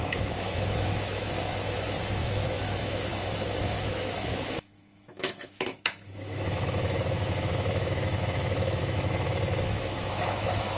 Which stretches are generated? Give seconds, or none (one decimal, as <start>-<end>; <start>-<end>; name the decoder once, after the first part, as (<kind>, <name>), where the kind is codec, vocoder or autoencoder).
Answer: 0.0-10.8 (autoencoder, DAC-VAE)